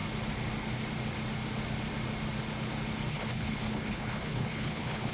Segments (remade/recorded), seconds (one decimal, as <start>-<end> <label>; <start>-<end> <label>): 0.0-3.1 recorded; 3.1-5.1 remade

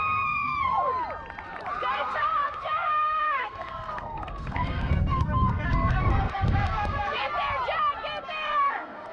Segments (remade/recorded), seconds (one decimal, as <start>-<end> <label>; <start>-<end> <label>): 0.0-0.9 remade; 0.9-1.9 recorded; 1.9-7.3 remade; 7.3-8.2 recorded; 8.2-9.1 remade

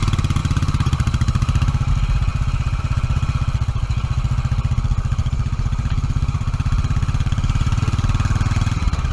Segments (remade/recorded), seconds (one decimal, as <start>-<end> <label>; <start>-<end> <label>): 0.0-0.4 recorded; 0.4-1.9 remade; 1.9-5.2 recorded; 5.2-7.8 remade; 7.8-9.1 recorded

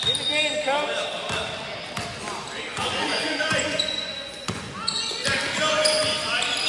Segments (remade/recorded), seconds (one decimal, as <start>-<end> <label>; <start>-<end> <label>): 0.0-2.7 recorded; 2.7-5.1 remade; 5.1-6.7 recorded

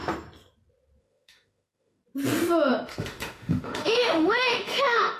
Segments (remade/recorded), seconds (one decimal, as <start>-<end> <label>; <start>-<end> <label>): 0.0-1.0 recorded; 1.0-2.0 remade; 2.0-2.7 recorded; 2.7-5.2 remade

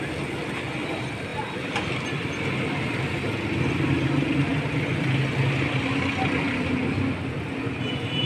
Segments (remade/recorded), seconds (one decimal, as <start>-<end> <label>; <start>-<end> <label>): 0.0-8.3 recorded

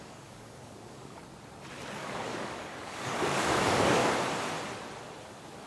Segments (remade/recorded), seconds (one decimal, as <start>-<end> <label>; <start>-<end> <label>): 0.0-1.2 remade; 1.2-2.0 recorded; 2.0-4.0 remade; 4.0-5.7 recorded

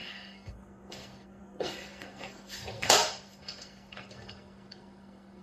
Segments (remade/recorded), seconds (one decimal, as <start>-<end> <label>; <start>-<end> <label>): 0.0-5.4 remade